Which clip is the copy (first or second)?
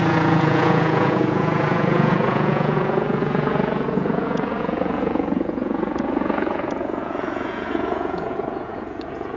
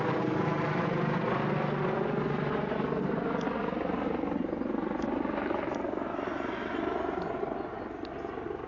first